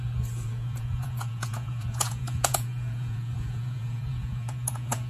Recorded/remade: remade